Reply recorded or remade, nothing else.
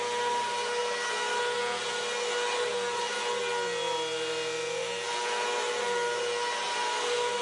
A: recorded